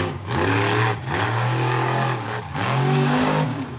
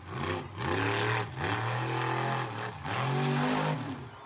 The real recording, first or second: second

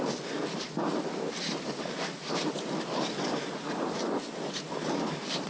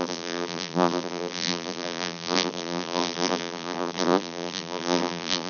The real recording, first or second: first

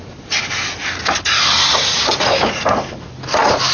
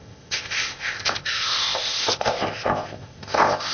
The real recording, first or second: first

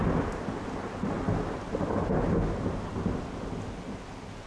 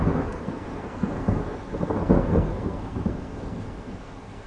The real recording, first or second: first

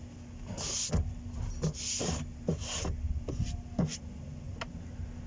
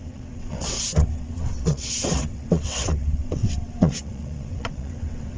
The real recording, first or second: first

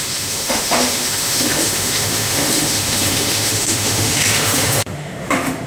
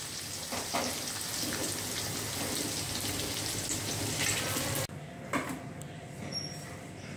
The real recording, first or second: second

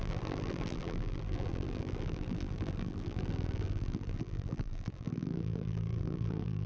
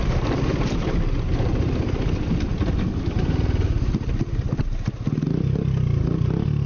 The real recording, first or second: second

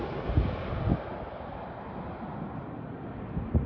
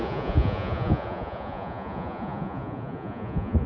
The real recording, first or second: first